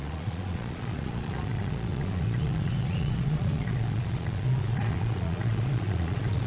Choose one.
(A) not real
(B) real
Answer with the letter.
A